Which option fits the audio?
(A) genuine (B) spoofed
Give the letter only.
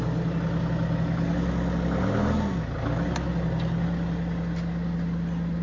A